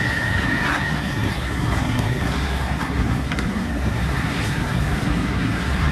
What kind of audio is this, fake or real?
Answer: fake